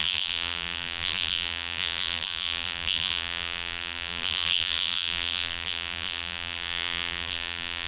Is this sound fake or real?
fake